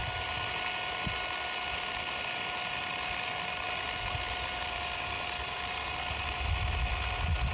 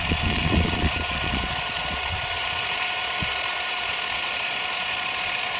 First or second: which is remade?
second